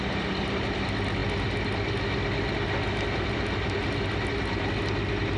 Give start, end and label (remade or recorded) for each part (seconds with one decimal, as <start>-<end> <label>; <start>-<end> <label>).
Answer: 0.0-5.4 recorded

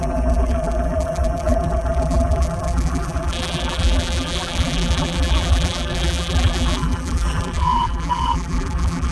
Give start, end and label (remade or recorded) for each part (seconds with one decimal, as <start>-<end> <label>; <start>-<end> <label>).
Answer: 0.0-9.1 remade

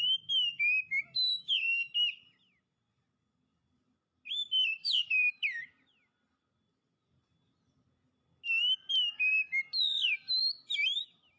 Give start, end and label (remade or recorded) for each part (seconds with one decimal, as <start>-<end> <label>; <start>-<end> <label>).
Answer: 0.0-3.5 recorded; 3.5-7.9 remade; 7.9-10.4 recorded; 10.4-11.0 remade; 11.0-11.4 recorded

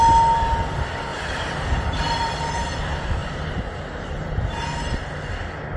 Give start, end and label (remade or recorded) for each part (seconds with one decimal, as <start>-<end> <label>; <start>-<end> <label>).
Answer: 0.0-1.1 recorded; 1.1-2.4 remade; 2.4-3.2 recorded; 3.2-4.4 remade; 4.4-5.8 recorded

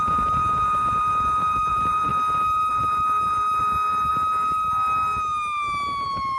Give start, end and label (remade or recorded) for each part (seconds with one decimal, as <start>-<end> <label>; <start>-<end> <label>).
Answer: 0.0-2.1 remade; 2.1-2.7 recorded; 2.7-4.1 remade; 4.1-6.4 recorded